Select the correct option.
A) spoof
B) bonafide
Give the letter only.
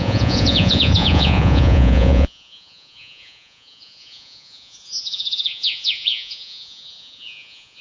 A